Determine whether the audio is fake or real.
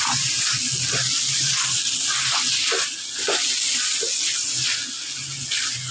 real